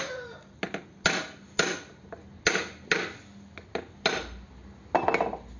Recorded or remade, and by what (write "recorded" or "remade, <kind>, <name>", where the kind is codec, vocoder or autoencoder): recorded